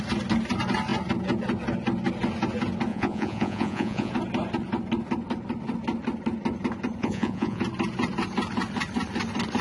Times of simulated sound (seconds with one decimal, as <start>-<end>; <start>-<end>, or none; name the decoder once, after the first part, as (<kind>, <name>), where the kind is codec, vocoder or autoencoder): 2.9-4.1 (vocoder, Vocos); 7.0-7.6